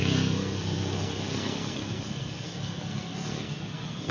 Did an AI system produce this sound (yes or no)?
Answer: yes